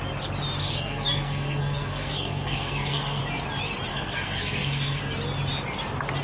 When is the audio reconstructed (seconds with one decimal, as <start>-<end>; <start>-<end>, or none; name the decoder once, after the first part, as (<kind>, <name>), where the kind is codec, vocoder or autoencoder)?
0.6-3.2 (codec, SNAC); 3.9-5.0